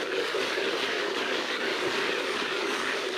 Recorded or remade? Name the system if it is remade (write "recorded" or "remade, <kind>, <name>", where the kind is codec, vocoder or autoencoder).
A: remade, codec, DAC